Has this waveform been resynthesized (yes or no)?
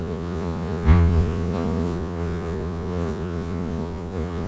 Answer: yes